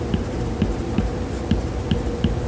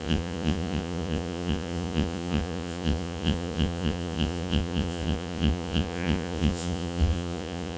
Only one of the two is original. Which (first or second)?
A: first